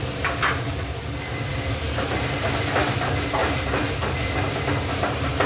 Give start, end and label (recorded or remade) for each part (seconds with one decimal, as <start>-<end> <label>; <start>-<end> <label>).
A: 0.0-3.4 recorded; 3.4-3.9 remade; 3.9-5.5 recorded